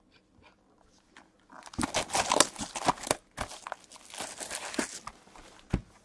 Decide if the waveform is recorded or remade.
recorded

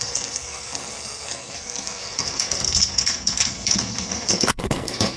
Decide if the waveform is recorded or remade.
remade